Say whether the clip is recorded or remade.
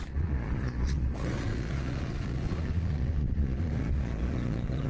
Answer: remade